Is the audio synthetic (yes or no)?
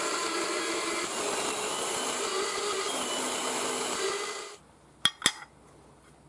no